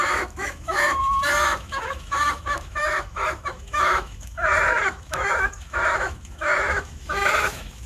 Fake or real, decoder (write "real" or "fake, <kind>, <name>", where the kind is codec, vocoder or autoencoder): fake, autoencoder, DAC-VAE